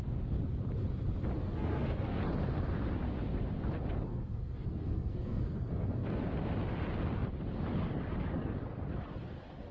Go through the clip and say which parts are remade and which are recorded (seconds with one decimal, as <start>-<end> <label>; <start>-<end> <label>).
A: 0.0-1.4 recorded; 1.4-2.2 remade; 2.2-4.1 recorded; 4.1-6.2 remade; 6.2-9.7 recorded